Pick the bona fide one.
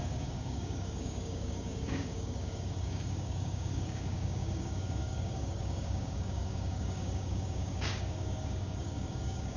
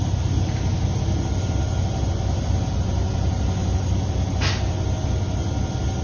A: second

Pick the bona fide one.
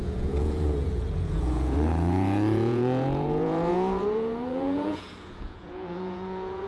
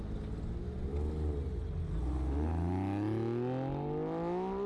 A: second